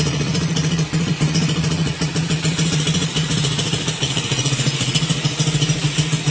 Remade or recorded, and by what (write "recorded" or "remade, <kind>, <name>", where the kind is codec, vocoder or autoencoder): remade, vocoder, Vocos